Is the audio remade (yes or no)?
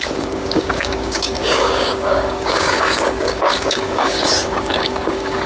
yes